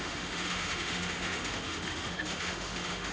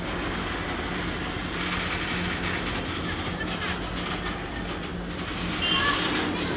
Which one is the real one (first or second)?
second